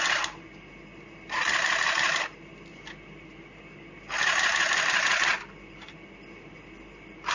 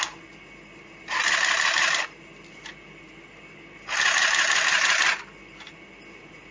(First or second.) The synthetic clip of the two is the first